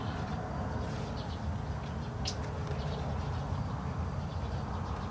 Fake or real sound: real